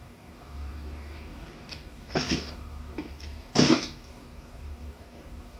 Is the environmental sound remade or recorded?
remade